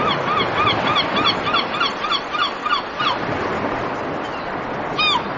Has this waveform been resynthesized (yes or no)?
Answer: no